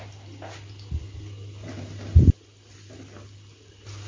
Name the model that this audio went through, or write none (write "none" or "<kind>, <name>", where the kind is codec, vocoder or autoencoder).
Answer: none